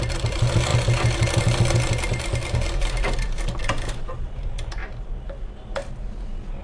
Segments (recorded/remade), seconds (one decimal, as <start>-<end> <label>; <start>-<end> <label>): 0.0-6.6 recorded